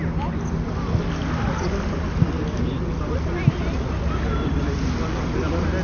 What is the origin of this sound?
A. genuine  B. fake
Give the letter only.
A